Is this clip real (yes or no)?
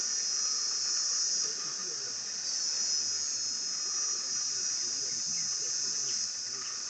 yes